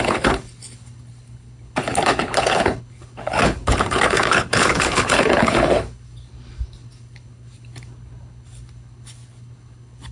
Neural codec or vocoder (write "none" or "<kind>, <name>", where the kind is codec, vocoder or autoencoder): codec, HILCodec